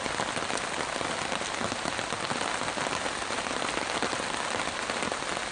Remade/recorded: recorded